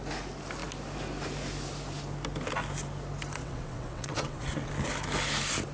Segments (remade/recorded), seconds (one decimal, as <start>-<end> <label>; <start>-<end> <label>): 0.0-3.4 recorded; 3.4-4.7 remade; 4.7-5.7 recorded